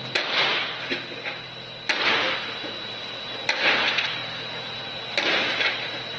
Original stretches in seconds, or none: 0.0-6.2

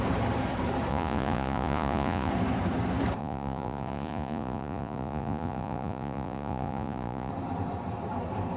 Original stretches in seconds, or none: 0.0-0.9; 2.3-3.2; 7.3-8.6

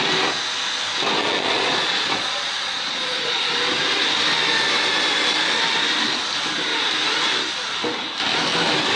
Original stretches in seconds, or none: 0.0-1.2; 3.5-8.9

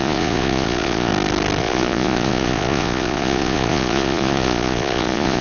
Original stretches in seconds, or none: 1.1-1.6